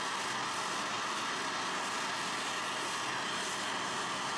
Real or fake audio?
real